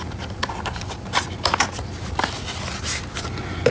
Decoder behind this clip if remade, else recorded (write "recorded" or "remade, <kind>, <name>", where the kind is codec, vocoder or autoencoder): recorded